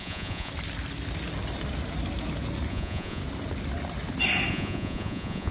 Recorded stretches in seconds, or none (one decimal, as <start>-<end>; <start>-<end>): 0.5-2.7; 3.2-4.5